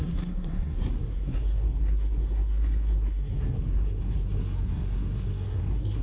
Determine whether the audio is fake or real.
fake